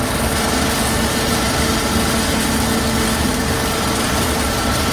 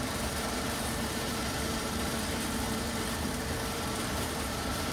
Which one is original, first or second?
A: first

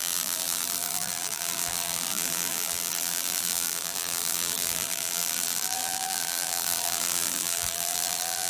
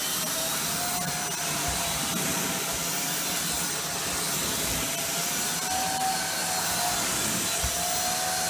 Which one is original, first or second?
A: second